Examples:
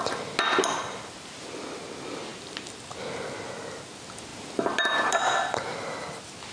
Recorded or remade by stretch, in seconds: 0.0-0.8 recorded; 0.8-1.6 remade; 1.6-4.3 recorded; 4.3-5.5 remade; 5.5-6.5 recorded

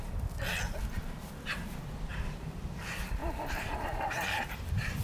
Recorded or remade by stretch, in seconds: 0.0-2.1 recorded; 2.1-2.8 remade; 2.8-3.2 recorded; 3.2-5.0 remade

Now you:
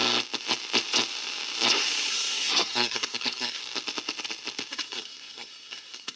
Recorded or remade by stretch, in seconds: 0.0-2.1 recorded; 2.1-3.6 remade; 3.6-4.7 recorded; 4.7-6.2 remade